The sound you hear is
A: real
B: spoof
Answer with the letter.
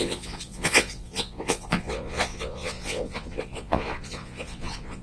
B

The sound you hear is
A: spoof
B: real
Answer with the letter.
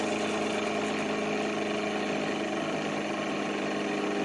B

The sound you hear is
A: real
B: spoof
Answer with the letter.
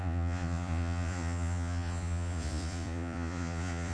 B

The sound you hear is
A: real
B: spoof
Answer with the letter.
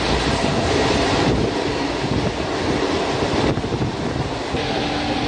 A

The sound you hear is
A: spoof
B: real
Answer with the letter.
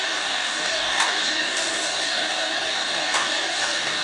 A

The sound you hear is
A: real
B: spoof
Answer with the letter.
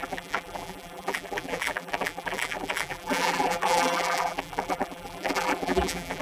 B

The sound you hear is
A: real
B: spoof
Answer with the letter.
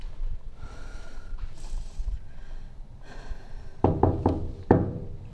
B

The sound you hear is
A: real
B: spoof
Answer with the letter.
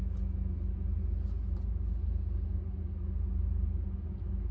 A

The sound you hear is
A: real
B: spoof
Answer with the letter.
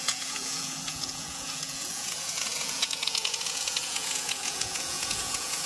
B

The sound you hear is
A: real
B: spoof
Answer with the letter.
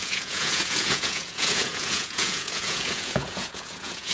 B